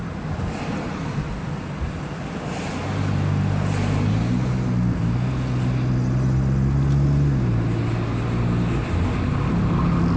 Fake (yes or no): no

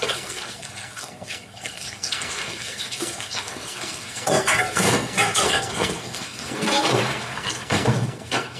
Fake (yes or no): yes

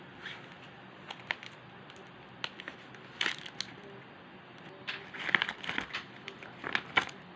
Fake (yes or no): no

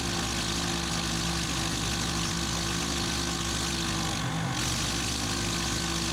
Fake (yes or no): no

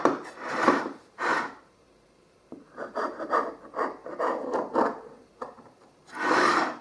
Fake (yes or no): yes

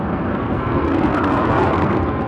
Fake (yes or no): yes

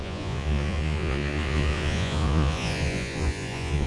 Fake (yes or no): yes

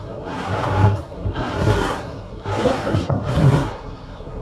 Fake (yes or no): yes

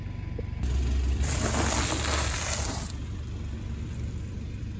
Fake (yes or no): no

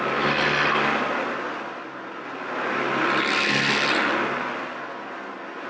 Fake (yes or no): no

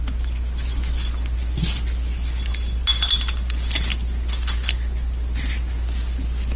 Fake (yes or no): no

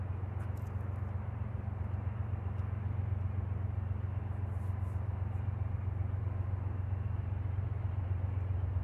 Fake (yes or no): no